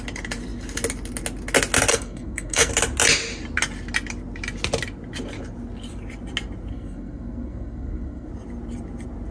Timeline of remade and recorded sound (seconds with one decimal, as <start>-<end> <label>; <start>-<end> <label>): 0.0-1.9 recorded; 1.9-2.7 remade; 2.7-6.7 recorded; 6.7-8.3 remade; 8.3-9.3 recorded